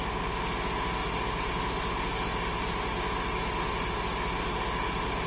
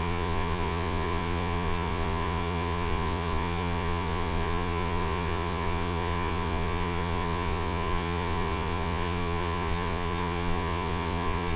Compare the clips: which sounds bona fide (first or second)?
first